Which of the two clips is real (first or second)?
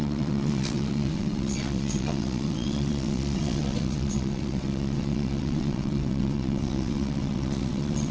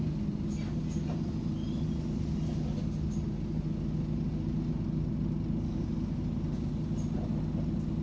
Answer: second